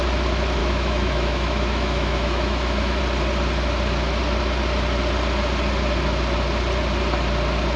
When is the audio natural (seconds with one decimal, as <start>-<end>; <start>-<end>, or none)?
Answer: 0.0-0.6; 3.0-7.8